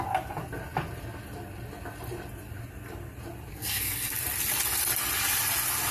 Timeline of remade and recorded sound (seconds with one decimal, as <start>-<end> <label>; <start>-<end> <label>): 0.0-3.5 recorded; 3.5-4.1 remade; 4.1-5.9 recorded